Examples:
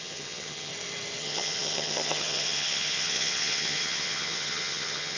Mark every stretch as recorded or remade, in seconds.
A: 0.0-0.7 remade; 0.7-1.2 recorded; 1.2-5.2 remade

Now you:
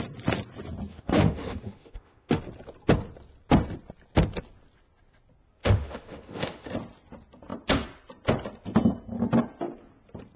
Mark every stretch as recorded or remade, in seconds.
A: 0.0-0.9 recorded; 0.9-2.4 remade; 2.4-5.6 recorded; 5.6-6.7 remade; 6.7-10.4 recorded

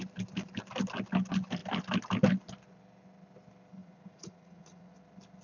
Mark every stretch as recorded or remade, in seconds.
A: 0.0-3.8 recorded; 3.8-4.9 remade; 4.9-5.4 recorded

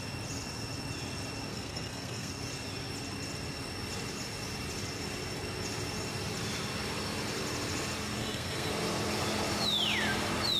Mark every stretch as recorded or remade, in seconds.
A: 0.0-1.5 recorded; 1.5-2.3 remade; 2.3-8.2 recorded; 8.2-8.7 remade; 8.7-10.6 recorded